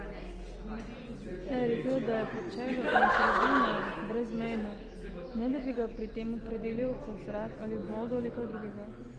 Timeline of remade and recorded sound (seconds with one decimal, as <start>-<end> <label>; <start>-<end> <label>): 0.0-1.3 recorded; 1.3-2.4 remade; 2.4-2.9 recorded; 2.9-5.7 remade; 5.7-7.8 recorded; 7.8-8.5 remade; 8.5-9.2 recorded